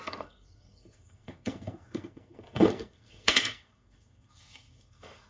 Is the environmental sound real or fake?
fake